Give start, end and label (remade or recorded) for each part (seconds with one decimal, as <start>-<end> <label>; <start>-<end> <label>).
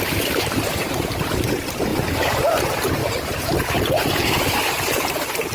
0.0-5.5 remade